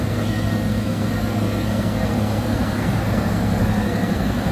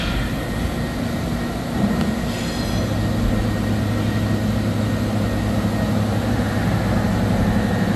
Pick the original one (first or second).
second